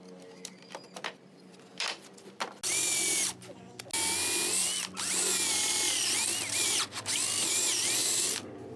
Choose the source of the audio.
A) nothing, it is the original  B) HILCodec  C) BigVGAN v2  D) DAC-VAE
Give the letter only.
A